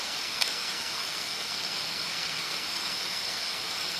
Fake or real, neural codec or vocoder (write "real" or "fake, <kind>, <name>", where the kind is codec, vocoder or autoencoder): fake, codec, SNAC